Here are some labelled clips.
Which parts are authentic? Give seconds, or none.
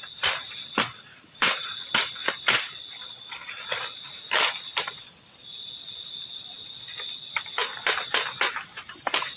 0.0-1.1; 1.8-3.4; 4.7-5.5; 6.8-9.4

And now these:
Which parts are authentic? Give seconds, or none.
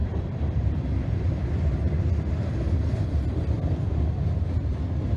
0.8-5.2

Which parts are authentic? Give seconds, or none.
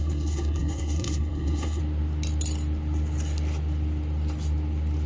1.8-5.1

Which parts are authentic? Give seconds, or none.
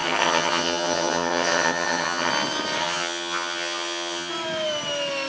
2.3-2.8; 4.3-5.3